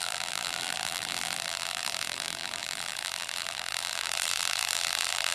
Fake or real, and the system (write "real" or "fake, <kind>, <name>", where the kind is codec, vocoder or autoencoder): fake, vocoder, BigVGAN v2